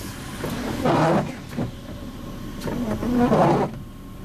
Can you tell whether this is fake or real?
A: real